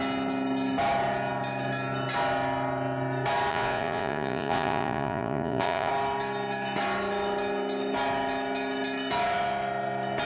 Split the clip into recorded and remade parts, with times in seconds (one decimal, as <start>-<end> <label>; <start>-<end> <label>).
0.0-3.5 recorded; 3.5-5.9 remade; 5.9-10.2 recorded